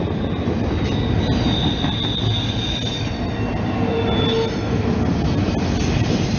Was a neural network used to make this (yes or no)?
no